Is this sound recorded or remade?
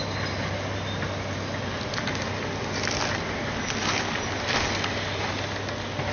recorded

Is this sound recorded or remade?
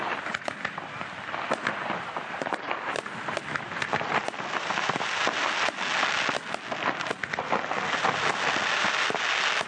recorded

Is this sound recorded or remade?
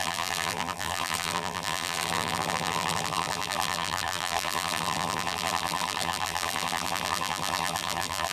remade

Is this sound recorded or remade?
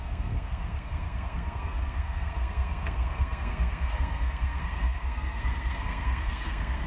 remade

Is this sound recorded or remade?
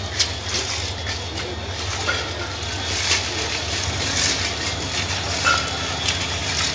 recorded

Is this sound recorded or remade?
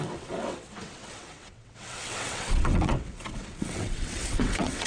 remade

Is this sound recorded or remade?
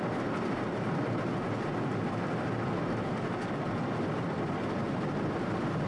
recorded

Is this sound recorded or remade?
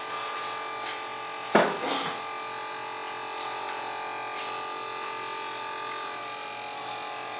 recorded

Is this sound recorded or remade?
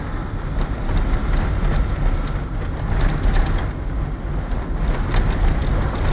recorded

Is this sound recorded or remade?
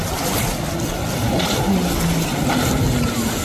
recorded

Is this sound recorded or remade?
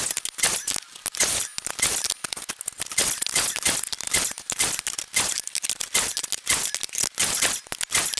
recorded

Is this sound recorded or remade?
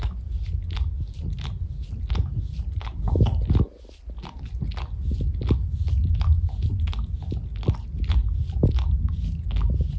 recorded